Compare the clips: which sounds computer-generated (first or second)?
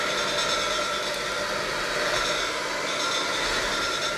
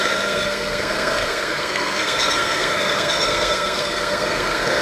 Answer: second